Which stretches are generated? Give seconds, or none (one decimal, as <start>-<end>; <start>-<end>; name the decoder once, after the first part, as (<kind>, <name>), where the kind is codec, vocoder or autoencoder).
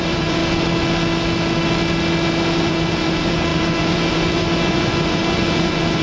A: 0.0-0.4 (vocoder, Vocos); 2.6-6.0